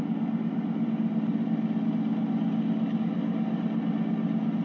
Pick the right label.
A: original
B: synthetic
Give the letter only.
A